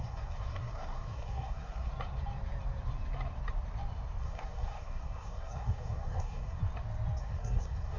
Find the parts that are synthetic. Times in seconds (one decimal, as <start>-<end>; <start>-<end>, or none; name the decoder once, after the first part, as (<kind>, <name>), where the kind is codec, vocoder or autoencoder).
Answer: 0.0-1.9 (codec, SNAC); 4.2-6.6; 7.2-8.0